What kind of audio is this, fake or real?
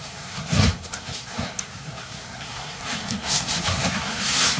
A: fake